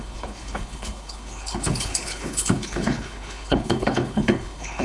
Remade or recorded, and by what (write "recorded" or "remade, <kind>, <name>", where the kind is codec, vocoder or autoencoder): remade, codec, HILCodec